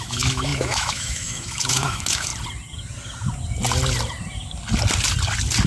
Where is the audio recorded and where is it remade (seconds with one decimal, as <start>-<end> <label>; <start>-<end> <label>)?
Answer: 0.0-2.3 remade; 2.3-5.7 recorded